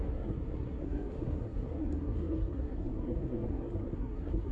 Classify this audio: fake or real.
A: fake